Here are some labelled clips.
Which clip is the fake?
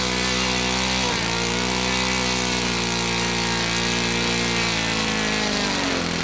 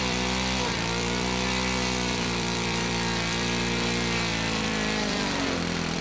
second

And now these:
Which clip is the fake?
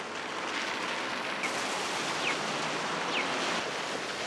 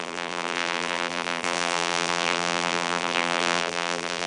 second